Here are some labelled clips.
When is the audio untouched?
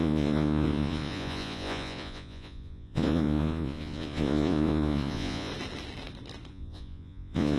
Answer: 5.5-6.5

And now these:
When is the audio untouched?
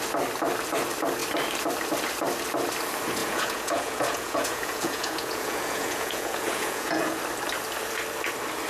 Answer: 0.0-3.2; 7.2-8.7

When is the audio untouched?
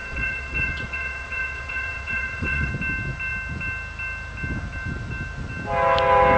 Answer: 2.7-6.4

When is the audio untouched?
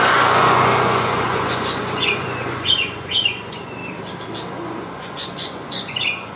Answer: 3.8-4.5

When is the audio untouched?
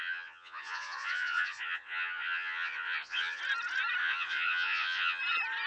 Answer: 3.4-4.0; 5.2-5.7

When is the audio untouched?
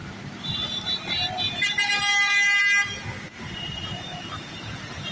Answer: 0.0-5.1